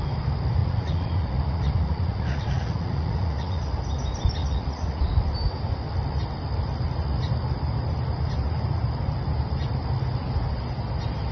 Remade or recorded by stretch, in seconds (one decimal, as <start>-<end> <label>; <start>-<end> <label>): 0.0-0.6 recorded; 0.6-3.7 remade; 3.7-4.4 recorded; 4.4-5.0 remade; 5.0-11.3 recorded